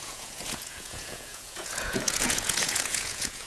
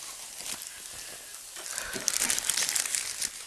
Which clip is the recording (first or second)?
second